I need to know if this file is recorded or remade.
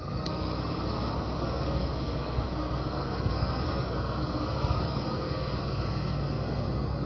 remade